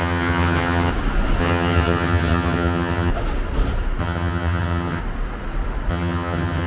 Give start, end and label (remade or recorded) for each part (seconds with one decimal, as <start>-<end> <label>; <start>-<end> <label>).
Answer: 0.0-0.9 remade; 0.9-1.4 recorded; 1.4-3.1 remade; 3.1-4.0 recorded; 4.0-5.0 remade; 5.0-5.9 recorded; 5.9-6.7 remade